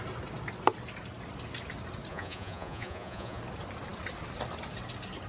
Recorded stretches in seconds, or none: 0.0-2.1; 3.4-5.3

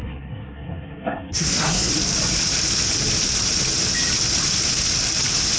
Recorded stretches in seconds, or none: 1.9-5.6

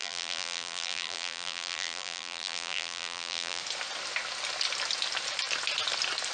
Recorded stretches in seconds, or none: 3.6-6.3

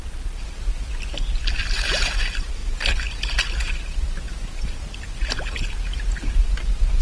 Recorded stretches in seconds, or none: 0.0-7.0

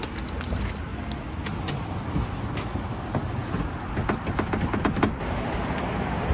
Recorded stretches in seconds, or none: 0.0-6.3

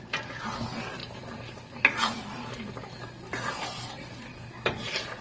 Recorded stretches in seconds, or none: 0.0-4.3

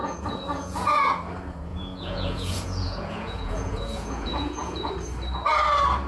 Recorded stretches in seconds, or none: 1.1-1.7; 4.9-6.1

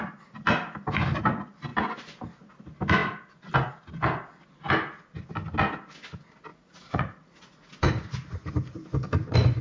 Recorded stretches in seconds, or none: 0.0-6.5; 7.7-9.6